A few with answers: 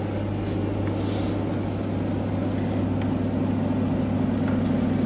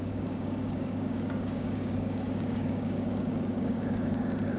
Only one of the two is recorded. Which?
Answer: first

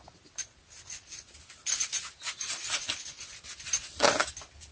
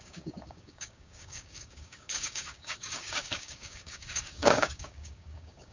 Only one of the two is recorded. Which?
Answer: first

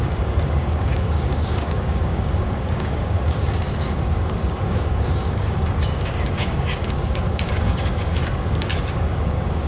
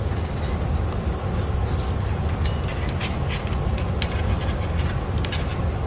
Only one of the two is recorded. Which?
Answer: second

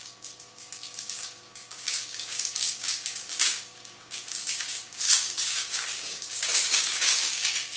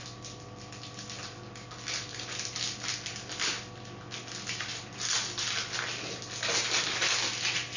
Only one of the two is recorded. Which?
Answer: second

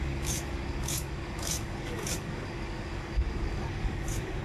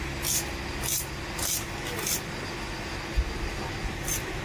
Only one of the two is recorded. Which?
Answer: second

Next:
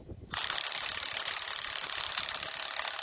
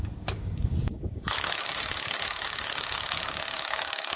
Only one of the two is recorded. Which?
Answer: first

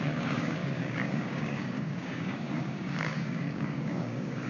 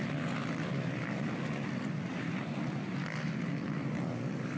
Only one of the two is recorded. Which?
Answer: second